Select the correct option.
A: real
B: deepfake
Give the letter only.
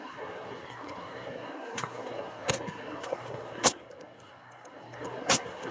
B